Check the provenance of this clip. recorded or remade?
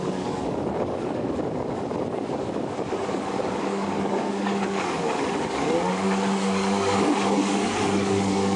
remade